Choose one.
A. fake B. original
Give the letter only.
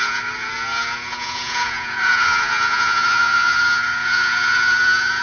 A